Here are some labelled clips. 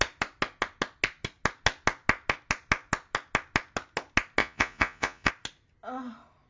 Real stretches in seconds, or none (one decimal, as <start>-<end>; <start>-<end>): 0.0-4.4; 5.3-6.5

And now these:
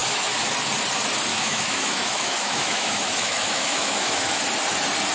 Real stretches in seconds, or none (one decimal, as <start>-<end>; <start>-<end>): 0.5-1.3; 4.4-5.1

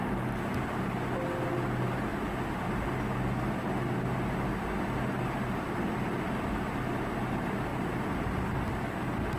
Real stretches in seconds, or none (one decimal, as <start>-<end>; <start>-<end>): 0.0-9.4

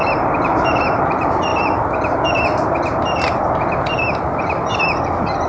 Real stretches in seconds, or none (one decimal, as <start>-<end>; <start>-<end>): 1.5-3.9

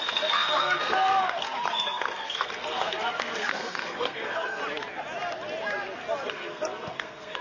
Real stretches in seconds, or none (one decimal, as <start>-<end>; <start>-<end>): 4.6-6.3

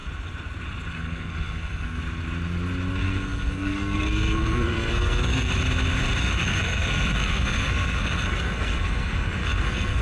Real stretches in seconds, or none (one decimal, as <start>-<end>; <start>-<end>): 0.0-0.9; 2.0-2.9; 5.5-6.2